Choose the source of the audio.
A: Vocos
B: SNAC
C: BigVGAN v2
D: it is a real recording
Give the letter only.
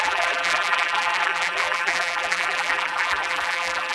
C